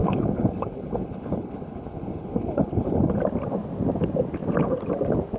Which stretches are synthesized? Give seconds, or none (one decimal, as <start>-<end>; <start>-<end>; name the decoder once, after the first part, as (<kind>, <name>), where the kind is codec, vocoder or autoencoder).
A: 0.0-3.2 (codec, HILCodec)